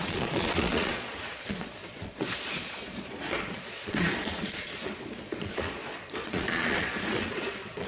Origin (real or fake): fake